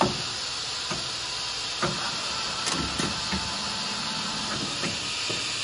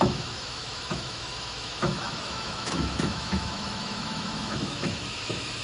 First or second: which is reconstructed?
second